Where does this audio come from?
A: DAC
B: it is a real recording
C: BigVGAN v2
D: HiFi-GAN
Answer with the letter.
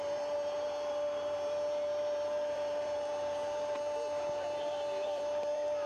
C